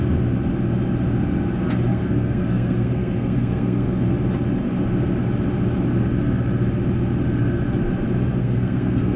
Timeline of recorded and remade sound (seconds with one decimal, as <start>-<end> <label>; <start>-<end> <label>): 0.0-1.9 recorded; 1.9-4.0 remade; 4.0-8.4 recorded; 8.4-9.2 remade